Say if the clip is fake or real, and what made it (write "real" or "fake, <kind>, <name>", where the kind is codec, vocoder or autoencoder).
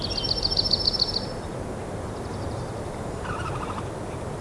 real